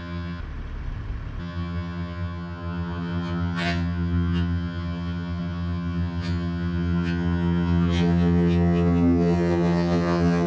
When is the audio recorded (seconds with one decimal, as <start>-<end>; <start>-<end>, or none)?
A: 0.4-1.4